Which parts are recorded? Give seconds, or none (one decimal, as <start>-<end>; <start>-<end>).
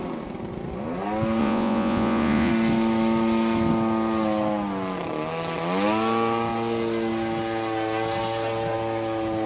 0.0-1.4; 2.5-9.5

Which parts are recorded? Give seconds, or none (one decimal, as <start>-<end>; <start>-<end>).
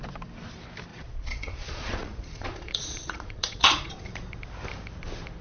0.0-0.9; 4.1-5.4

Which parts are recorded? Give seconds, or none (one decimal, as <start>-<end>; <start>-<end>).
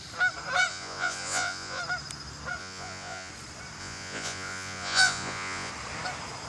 0.0-0.7; 1.8-2.6; 3.3-3.8; 5.7-6.5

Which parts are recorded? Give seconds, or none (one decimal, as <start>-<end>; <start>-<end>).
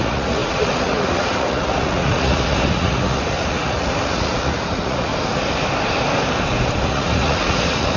5.1-6.8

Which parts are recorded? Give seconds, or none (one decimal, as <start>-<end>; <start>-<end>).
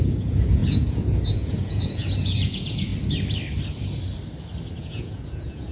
2.9-4.8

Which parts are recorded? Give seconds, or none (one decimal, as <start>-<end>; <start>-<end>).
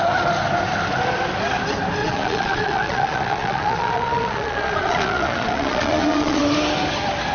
0.0-2.0; 6.4-7.3